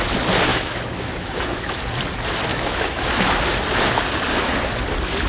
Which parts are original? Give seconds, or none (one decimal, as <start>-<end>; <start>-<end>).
0.0-0.5; 1.8-2.5; 3.3-5.3